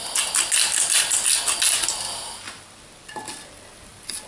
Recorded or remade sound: recorded